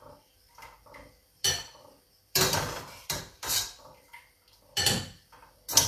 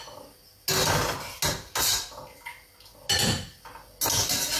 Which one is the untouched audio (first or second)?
second